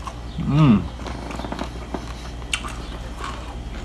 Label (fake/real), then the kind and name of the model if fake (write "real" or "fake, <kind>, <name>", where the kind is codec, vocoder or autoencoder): real